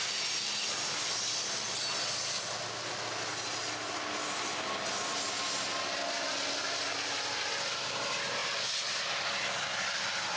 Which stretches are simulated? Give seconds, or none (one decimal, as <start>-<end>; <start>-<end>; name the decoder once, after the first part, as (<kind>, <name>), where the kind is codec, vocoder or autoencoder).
none